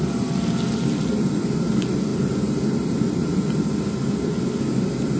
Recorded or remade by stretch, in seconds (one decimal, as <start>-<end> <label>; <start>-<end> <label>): 0.0-5.2 recorded